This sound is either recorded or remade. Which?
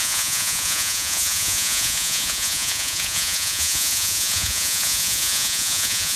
remade